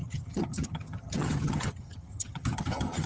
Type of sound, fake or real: fake